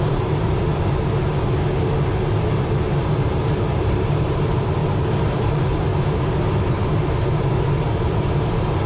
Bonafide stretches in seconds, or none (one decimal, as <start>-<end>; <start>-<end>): 0.7-2.4; 4.8-5.3; 5.9-6.7